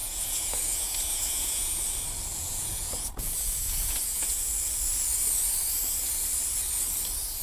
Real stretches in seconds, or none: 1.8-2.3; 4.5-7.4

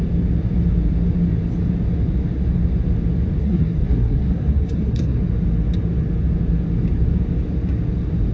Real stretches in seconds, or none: 0.0-3.4; 5.2-8.3

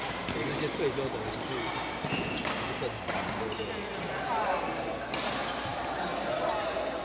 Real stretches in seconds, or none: 0.0-7.0